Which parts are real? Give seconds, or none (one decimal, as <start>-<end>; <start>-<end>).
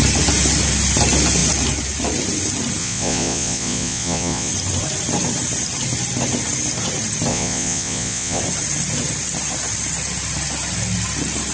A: 0.0-2.8; 4.5-7.3; 8.4-11.5